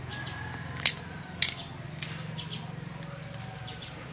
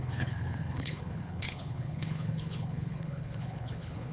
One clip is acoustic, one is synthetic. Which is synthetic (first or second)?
second